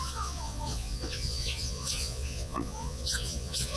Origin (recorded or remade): remade